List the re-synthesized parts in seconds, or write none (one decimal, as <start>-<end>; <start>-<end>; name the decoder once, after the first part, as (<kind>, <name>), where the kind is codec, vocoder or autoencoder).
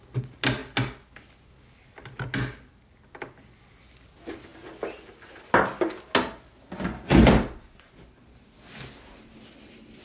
none